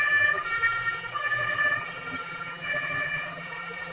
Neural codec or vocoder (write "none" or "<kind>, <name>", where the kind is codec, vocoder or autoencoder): vocoder, BigVGAN v2